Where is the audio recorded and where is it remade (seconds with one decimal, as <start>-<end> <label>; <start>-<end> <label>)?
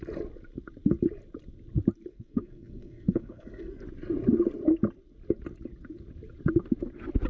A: 0.0-2.1 recorded; 2.1-3.8 remade; 3.8-7.3 recorded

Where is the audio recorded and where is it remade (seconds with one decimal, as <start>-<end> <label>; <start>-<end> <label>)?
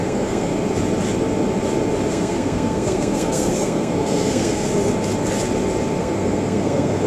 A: 0.0-0.5 remade; 0.5-2.1 recorded; 2.1-4.7 remade; 4.7-6.0 recorded; 6.0-7.1 remade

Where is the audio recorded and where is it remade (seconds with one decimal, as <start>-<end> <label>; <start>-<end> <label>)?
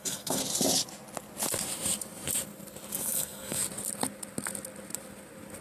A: 0.0-0.4 remade; 0.4-3.0 recorded; 3.0-3.6 remade; 3.6-5.6 recorded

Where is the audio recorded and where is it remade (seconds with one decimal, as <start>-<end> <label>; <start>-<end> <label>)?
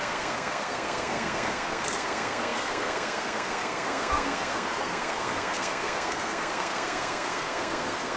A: 0.0-8.2 remade